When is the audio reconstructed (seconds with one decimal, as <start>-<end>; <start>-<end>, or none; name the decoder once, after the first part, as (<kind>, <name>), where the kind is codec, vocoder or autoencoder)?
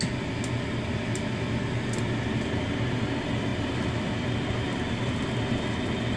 none